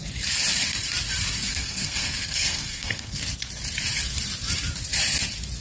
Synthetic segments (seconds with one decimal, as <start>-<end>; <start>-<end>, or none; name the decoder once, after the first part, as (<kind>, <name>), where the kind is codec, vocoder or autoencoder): 1.5-3.2 (codec, SNAC)